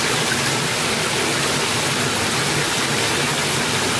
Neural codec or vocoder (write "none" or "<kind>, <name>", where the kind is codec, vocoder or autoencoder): none